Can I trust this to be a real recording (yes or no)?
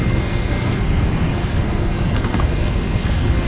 no